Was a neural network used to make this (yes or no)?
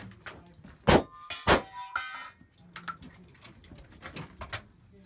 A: no